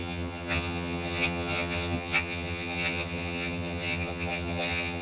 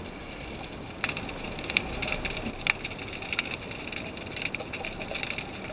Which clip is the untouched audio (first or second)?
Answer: second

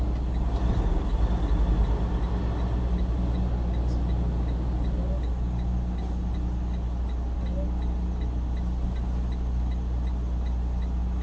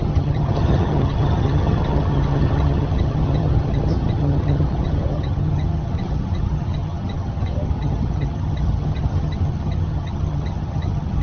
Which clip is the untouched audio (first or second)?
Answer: first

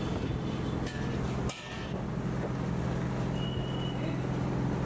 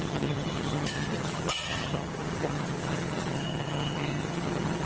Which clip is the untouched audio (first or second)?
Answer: first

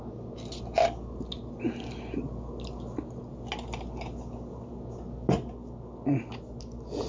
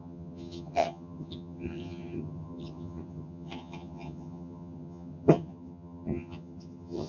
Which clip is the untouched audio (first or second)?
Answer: first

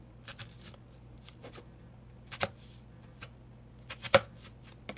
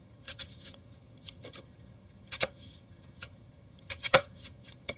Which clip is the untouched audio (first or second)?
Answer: first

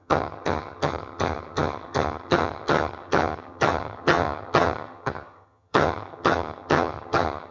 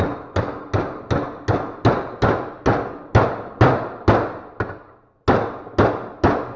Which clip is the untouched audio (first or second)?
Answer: second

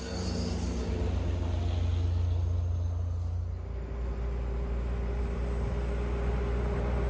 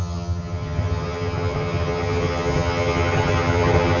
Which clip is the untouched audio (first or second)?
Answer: first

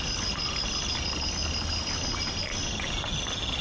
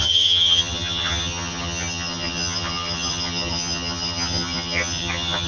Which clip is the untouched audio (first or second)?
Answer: first